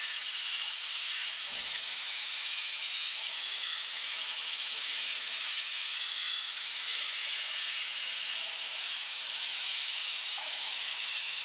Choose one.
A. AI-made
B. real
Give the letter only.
A